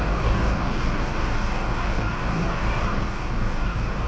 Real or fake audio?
fake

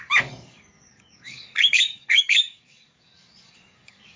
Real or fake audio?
fake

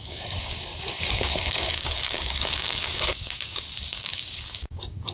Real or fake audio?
fake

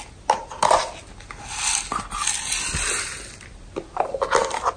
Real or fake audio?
real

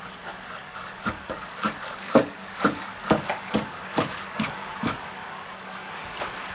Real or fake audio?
fake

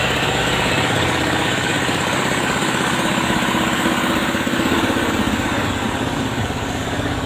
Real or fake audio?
fake